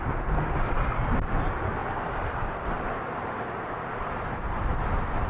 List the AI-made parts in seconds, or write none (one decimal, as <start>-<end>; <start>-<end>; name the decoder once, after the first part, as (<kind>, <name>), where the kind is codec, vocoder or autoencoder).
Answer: 1.8-5.3 (vocoder, BigVGAN v2)